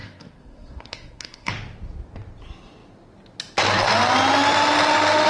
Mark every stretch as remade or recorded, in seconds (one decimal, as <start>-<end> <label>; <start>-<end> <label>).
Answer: 0.0-1.5 remade; 1.5-5.3 recorded